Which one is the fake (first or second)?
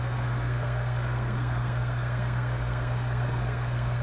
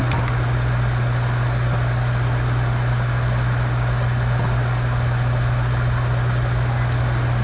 first